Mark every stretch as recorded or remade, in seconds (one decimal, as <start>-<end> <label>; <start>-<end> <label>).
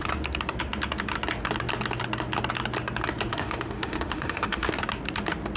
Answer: 0.0-3.3 recorded; 3.3-4.8 remade; 4.8-5.6 recorded